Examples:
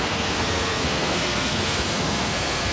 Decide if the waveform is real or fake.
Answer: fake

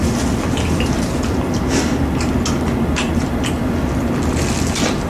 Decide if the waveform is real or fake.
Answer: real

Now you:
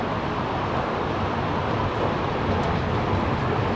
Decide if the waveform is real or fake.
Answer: real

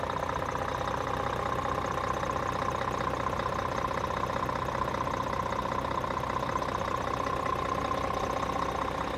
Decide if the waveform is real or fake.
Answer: real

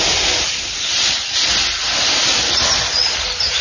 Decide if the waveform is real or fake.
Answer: real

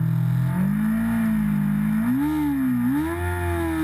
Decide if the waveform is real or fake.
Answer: real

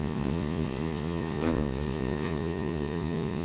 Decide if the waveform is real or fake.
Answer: fake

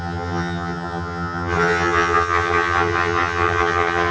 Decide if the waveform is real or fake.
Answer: fake